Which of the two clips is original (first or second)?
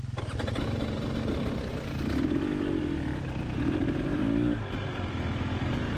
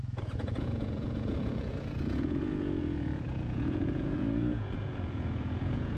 first